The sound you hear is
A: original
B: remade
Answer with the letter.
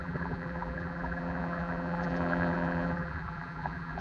B